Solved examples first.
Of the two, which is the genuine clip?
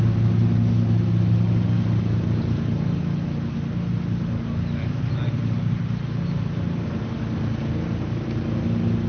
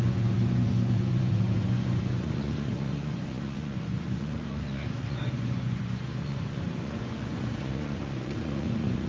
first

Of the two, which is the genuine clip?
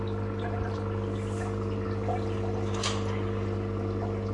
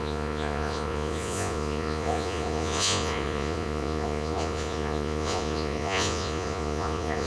first